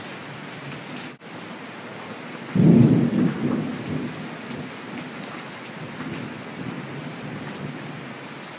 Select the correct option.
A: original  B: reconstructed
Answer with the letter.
A